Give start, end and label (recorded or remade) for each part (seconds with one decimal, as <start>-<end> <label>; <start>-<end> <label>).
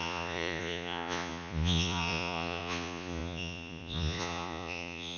0.0-5.2 remade